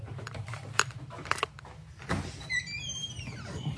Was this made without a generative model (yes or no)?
yes